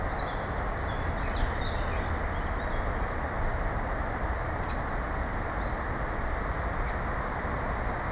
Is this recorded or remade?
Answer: recorded